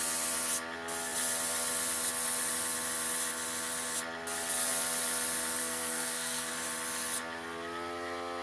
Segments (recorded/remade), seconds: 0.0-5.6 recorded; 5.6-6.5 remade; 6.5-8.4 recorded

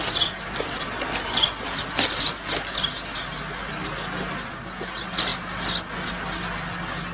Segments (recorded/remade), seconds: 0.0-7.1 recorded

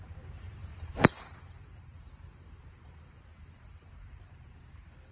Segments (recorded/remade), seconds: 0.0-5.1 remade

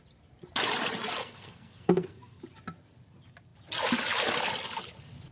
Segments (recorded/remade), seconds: 0.0-1.2 recorded; 1.2-2.4 remade; 2.4-5.3 recorded